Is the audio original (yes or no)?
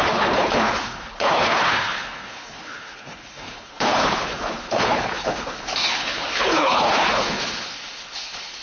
no